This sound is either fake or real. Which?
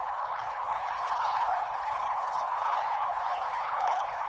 fake